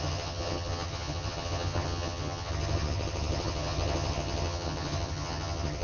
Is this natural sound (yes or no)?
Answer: no